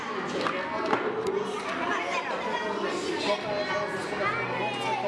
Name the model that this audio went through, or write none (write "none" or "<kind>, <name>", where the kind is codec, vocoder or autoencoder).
none